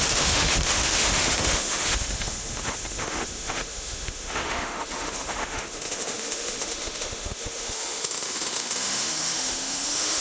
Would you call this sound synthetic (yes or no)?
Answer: yes